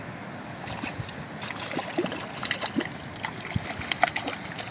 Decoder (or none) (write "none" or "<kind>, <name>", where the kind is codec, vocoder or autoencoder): none